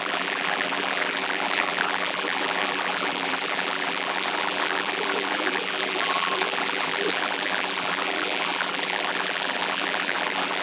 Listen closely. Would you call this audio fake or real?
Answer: fake